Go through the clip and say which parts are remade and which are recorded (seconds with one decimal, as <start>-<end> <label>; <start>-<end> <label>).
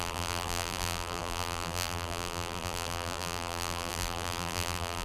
0.0-5.0 remade